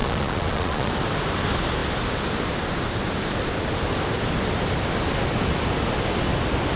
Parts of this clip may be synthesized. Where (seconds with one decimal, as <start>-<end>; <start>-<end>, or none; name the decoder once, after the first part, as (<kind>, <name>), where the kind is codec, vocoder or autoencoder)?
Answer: 0.0-0.9 (vocoder, Vocos)